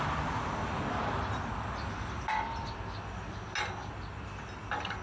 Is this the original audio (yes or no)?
yes